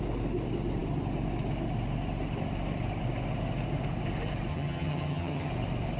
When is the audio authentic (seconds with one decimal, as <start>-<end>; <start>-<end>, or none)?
0.0-4.5; 5.5-6.0